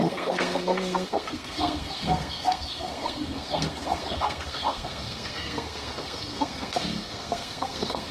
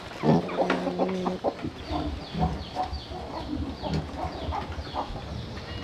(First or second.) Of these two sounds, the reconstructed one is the first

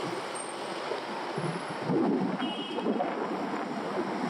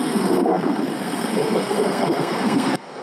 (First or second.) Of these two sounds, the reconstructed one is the second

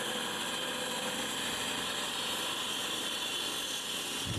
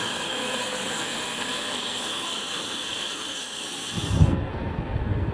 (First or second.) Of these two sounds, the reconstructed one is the second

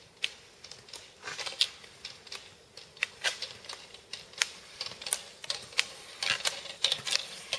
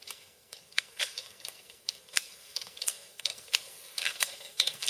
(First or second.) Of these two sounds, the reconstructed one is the second